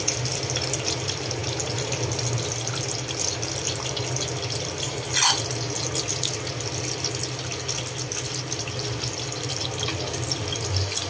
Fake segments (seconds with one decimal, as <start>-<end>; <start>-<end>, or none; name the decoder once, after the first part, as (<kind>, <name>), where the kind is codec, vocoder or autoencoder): none